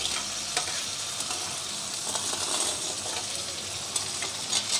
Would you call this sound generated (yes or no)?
no